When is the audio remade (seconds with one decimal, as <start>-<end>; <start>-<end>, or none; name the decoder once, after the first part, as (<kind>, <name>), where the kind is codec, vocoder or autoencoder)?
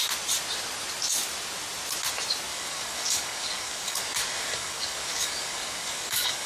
2.5-6.5 (codec, DAC)